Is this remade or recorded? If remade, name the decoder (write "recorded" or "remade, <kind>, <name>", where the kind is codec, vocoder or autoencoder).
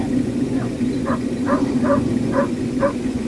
remade, vocoder, Vocos